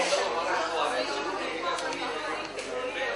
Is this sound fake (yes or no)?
no